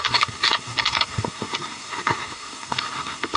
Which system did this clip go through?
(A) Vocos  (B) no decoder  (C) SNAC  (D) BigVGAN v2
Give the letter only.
C